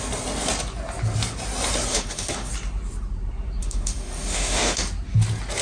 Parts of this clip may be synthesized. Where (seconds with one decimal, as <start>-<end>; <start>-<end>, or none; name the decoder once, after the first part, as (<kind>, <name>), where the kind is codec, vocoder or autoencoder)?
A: 1.9-2.5 (autoencoder, DAC-VAE); 3.6-4.9